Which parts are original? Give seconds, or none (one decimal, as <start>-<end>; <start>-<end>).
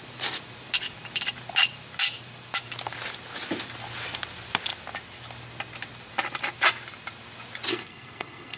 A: 0.0-7.7